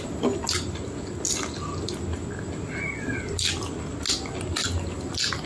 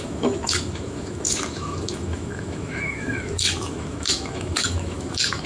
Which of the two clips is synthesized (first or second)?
second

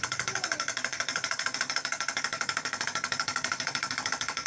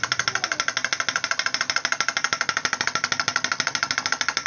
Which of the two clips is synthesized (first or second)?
first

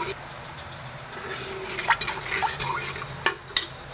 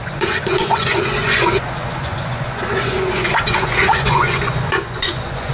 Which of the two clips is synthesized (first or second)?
second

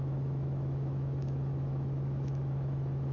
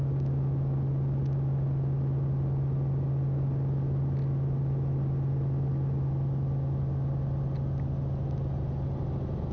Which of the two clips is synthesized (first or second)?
first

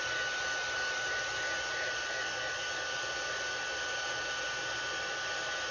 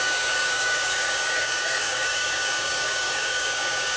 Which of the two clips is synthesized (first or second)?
second